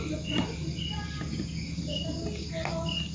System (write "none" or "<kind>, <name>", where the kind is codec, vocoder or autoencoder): none